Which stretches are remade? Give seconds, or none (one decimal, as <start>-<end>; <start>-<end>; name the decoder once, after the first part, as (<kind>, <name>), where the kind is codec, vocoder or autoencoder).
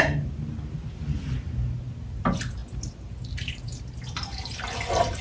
none